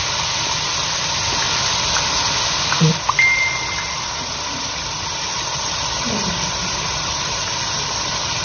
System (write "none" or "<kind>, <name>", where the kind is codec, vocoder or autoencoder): vocoder, BigVGAN v2